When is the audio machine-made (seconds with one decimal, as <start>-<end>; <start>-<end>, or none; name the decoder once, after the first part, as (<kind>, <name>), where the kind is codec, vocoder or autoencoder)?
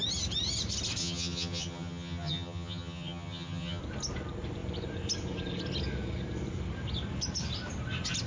1.0-3.8 (vocoder, HiFi-GAN)